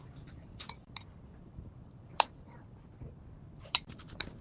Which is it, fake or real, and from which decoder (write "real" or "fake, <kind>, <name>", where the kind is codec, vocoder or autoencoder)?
fake, vocoder, BigVGAN v2